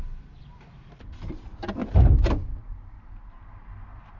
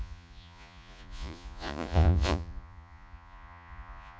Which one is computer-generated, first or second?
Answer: second